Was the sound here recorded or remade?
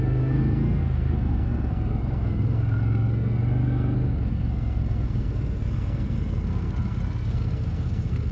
remade